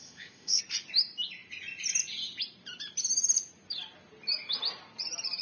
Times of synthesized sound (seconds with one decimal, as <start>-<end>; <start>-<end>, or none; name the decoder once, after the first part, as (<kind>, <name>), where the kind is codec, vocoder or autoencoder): 0.0-0.6 (codec, ZipCodec)

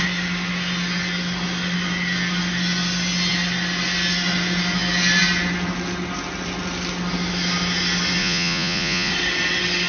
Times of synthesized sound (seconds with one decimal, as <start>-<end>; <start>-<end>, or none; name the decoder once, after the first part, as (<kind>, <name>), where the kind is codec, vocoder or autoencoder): 8.2-9.1 (vocoder, Vocos)

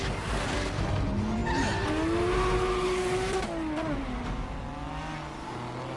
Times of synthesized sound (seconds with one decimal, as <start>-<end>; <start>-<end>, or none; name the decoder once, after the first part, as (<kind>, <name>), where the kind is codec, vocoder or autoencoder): none

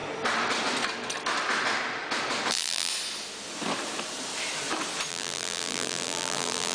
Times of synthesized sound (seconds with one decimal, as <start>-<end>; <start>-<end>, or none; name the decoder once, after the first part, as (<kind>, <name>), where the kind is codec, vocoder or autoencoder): 2.5-2.9 (vocoder, BigVGAN v2); 5.1-6.7

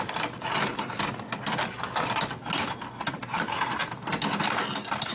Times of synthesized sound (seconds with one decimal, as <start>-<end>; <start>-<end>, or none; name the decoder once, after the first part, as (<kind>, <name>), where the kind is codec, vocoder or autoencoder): none

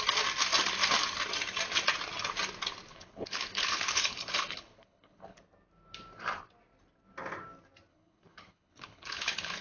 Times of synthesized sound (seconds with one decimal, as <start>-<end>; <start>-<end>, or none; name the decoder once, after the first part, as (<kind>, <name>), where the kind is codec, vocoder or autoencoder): 2.9-5.4 (codec, HILCodec); 7.9-9.6

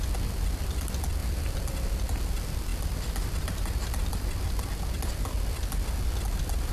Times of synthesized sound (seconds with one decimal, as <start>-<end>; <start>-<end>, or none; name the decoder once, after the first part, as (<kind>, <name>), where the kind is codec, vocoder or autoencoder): none

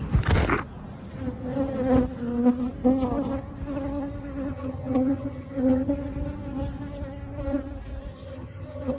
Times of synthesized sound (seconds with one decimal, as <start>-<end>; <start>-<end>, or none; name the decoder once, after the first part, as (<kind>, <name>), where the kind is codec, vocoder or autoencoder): 4.5-5.9 (vocoder, HiFi-GAN); 8.1-9.0